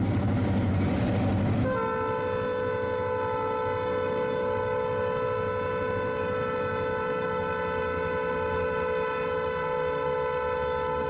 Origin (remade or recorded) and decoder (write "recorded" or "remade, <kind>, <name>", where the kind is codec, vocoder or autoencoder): recorded